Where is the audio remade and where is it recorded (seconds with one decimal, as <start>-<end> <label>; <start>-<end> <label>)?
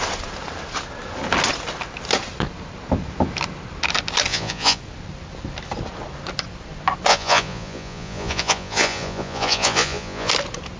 0.0-4.3 recorded; 4.3-4.8 remade; 4.8-7.1 recorded; 7.1-10.3 remade; 10.3-10.8 recorded